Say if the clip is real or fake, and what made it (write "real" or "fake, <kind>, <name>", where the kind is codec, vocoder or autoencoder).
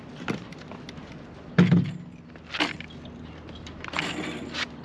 real